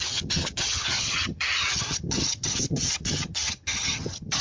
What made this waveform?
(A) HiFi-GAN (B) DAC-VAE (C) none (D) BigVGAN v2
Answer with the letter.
A